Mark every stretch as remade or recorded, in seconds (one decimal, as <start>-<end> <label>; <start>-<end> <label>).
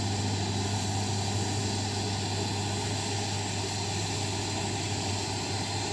0.0-5.9 recorded